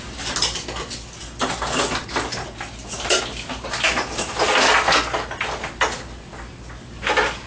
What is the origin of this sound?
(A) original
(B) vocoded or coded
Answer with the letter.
A